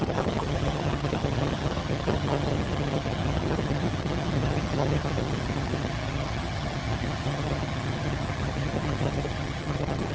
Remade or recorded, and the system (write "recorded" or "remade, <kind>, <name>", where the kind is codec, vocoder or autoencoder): remade, vocoder, HiFi-GAN